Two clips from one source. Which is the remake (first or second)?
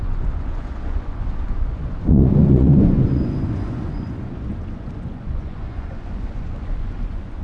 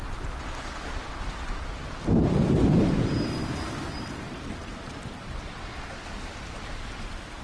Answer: first